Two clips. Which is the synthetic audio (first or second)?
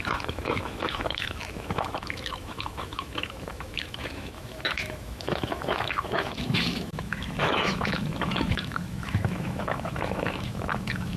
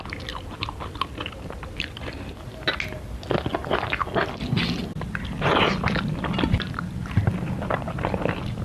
first